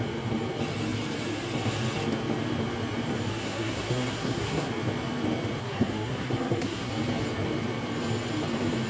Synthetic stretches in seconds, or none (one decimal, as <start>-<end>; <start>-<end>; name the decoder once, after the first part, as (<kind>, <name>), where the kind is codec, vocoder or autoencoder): 3.3-4.7 (codec, SNAC); 5.6-6.9